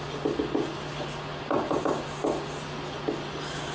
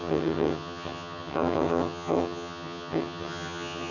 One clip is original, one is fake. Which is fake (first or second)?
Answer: second